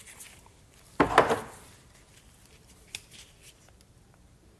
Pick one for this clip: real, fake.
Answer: real